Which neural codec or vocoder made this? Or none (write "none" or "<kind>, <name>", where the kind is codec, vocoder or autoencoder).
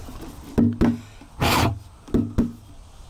none